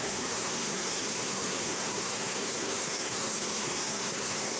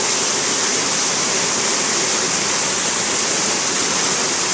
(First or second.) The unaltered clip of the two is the second